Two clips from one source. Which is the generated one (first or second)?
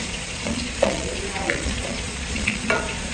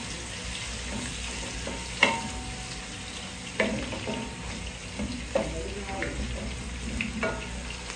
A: first